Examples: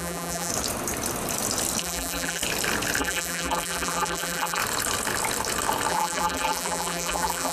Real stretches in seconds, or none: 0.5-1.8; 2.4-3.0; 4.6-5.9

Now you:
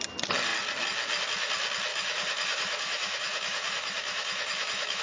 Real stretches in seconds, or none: 0.0-1.9

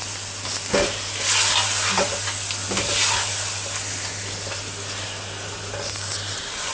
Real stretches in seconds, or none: 0.0-6.7

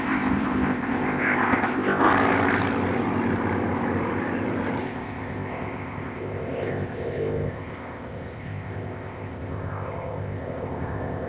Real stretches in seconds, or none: 2.1-4.8

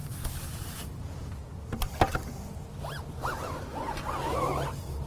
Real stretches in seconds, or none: 0.0-5.1

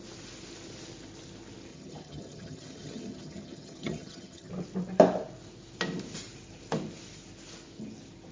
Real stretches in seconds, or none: 0.0-1.7; 4.5-8.3

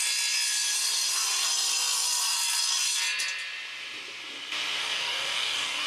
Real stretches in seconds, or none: 0.0-4.8